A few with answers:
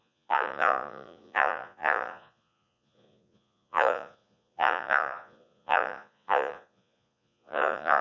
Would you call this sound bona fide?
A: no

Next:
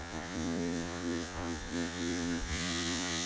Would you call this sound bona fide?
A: no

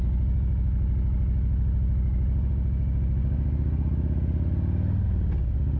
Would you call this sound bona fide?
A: yes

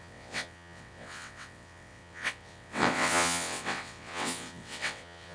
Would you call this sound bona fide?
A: no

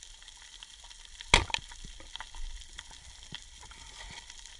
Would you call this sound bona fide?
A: yes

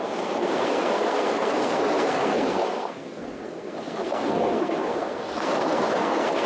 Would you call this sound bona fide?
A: no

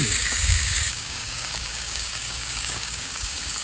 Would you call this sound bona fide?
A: no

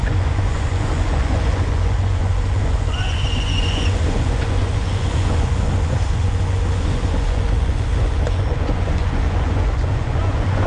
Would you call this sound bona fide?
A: no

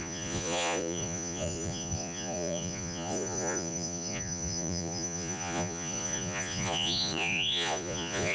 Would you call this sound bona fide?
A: no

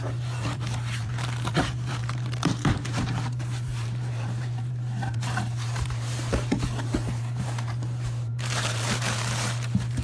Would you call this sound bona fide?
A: no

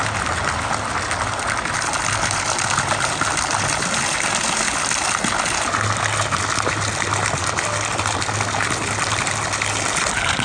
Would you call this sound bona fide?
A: yes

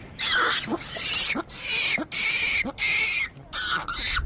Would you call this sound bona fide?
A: yes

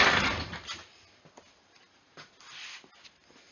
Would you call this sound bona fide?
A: yes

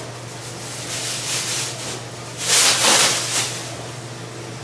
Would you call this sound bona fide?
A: yes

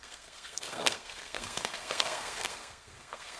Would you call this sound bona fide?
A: no